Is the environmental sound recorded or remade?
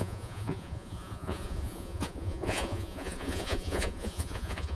remade